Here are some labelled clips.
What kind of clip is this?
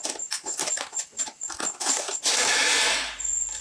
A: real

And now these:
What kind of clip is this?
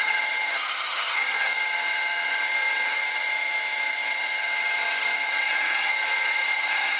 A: fake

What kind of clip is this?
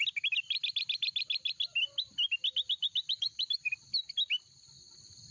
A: real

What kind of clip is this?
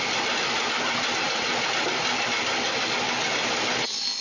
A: real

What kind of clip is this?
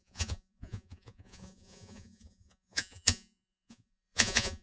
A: fake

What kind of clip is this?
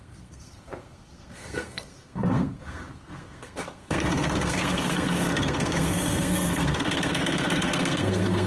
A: fake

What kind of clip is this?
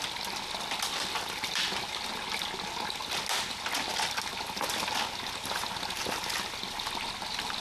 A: real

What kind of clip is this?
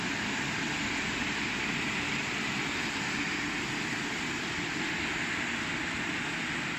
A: fake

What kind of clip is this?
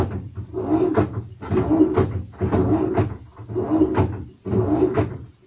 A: real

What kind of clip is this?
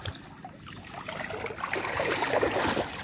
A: real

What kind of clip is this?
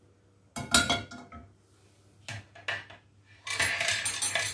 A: real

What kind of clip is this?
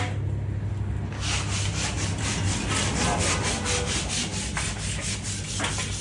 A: real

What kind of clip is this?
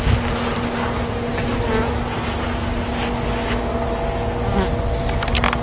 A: real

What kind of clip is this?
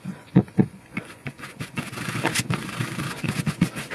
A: fake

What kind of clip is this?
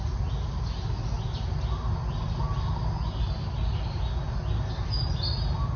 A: real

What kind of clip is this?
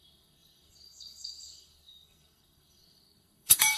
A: fake